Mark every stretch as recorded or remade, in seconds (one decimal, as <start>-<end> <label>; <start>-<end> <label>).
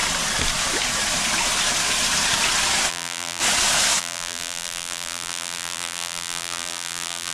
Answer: 0.0-2.9 recorded; 2.9-3.4 remade; 3.4-4.0 recorded; 4.0-7.3 remade